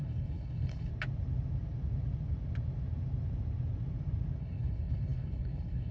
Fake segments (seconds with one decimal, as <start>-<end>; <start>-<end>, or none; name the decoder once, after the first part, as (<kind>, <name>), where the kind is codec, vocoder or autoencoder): 0.0-0.9 (codec, HILCodec); 4.4-5.9